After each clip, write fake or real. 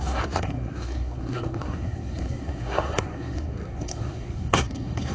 fake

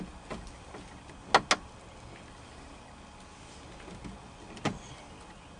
real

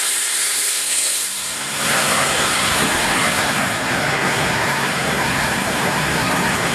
fake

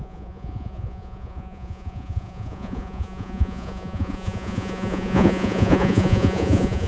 fake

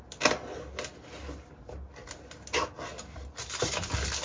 real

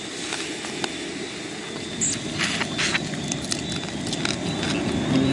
real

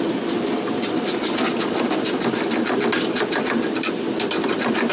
real